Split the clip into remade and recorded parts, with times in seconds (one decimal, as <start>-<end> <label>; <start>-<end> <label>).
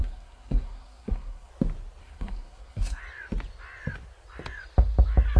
0.0-1.5 remade; 1.5-2.0 recorded; 2.0-3.0 remade; 3.0-5.4 recorded